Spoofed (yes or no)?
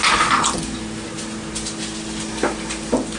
no